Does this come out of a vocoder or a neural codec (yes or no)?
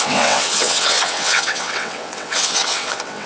yes